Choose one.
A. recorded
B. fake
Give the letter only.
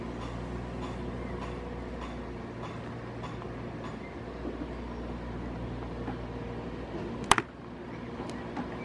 A